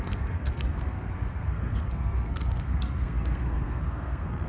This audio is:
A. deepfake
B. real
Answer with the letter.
A